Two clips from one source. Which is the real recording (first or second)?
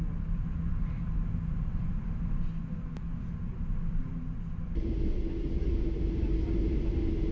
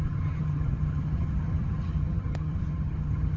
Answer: first